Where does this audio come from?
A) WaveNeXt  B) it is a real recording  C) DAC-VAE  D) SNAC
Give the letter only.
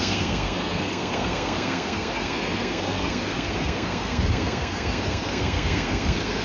D